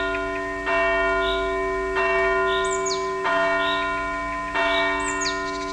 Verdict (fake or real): real